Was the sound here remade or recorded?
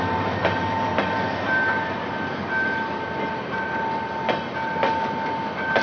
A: recorded